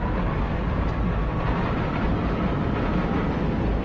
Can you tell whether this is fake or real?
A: real